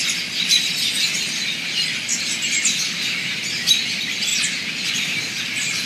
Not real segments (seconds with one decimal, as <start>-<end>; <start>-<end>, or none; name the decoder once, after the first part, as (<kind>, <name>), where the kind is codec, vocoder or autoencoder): none